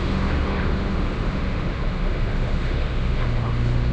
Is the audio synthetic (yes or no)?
yes